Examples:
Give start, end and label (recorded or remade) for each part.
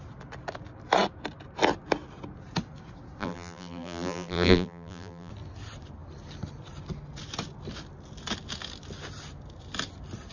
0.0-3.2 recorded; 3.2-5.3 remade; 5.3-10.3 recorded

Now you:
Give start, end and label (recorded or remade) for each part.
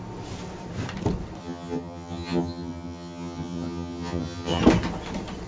0.0-1.4 recorded; 1.4-4.6 remade; 4.6-5.5 recorded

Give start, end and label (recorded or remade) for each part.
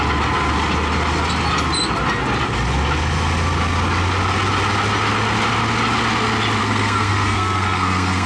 0.0-6.6 recorded; 6.6-8.3 remade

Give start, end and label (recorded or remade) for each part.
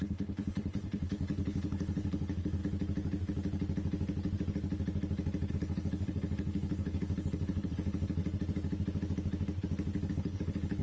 0.0-2.6 remade; 2.6-5.5 recorded; 5.5-8.2 remade; 8.2-10.1 recorded; 10.1-10.8 remade